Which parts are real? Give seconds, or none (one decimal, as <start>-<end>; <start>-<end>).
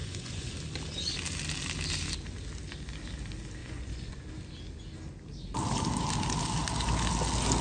0.5-3.6; 4.3-7.6